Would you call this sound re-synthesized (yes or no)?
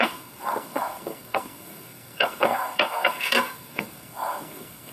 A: yes